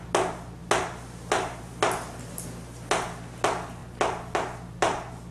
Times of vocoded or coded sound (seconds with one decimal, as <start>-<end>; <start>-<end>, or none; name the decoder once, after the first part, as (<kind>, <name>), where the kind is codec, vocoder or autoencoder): none